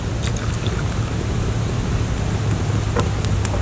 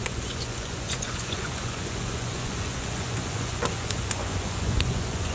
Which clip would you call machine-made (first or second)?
second